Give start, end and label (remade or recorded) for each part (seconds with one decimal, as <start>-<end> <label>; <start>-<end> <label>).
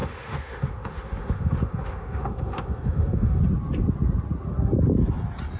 0.0-3.4 remade; 3.4-5.6 recorded